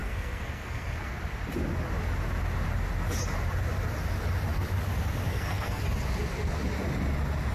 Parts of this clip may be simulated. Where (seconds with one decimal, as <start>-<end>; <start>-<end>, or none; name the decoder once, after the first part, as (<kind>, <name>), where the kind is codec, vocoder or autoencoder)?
0.0-1.2 (codec, SNAC); 5.3-5.8

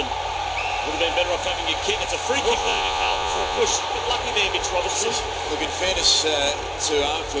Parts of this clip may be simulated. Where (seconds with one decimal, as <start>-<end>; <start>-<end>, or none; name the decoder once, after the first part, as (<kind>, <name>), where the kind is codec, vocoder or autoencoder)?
2.6-3.6 (vocoder, Vocos)

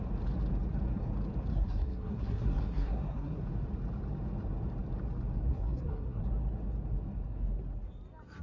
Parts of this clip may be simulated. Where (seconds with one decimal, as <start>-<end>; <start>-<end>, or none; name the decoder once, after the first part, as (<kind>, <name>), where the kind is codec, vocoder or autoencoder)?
1.5-3.4 (codec, SNAC); 5.5-6.2

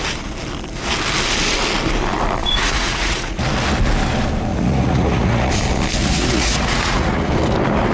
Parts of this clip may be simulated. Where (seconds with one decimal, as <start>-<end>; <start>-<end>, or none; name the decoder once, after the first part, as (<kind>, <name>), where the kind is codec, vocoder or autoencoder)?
2.4-3.4 (vocoder, Vocos); 4.5-5.5; 6.0-7.3

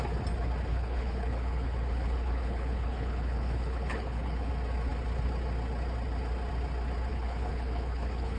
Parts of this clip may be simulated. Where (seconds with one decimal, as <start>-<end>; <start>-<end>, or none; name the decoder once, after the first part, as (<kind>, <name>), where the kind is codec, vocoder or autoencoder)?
0.7-4.5 (codec, HILCodec); 7.1-8.4